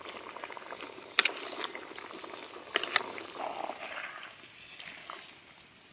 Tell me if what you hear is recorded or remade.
recorded